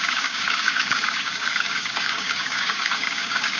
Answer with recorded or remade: remade